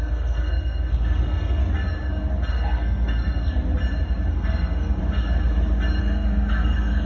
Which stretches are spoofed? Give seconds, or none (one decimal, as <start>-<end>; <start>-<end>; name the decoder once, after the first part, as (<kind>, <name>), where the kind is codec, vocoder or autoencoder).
0.0-1.6 (codec, SNAC); 2.5-3.4; 4.3-5.0; 6.0-7.1